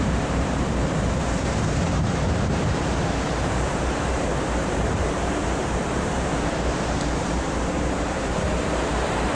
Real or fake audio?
fake